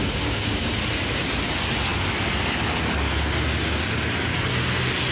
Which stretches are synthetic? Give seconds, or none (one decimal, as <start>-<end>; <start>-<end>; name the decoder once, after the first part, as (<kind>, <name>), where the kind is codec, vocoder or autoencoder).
0.0-0.7 (codec, DAC)